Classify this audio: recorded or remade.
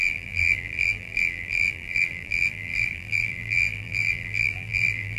remade